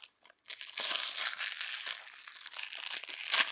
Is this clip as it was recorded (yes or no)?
yes